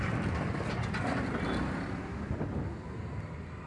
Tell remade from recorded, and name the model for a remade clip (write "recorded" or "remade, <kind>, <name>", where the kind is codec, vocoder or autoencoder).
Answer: recorded